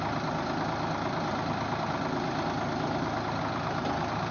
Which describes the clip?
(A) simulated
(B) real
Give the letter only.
B